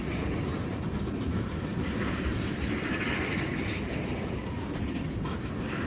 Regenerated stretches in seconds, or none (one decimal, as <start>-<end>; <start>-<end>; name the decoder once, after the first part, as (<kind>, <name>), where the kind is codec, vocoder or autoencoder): none